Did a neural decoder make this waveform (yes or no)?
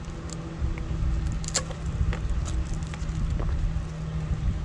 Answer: no